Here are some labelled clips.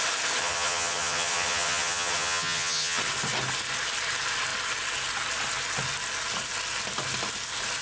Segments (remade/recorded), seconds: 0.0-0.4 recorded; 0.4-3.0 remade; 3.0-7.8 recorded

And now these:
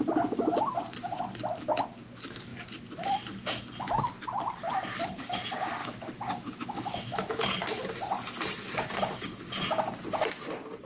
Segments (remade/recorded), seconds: 0.0-5.8 recorded; 5.8-7.4 remade; 7.4-10.9 recorded